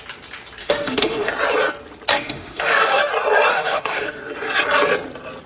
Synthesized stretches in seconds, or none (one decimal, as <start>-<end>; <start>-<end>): 0.6-1.3; 2.1-3.1; 3.5-4.2